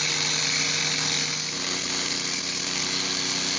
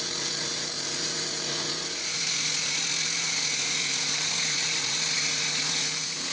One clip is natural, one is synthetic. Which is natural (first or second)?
first